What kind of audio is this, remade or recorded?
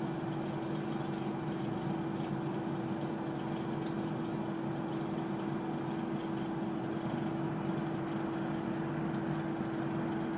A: recorded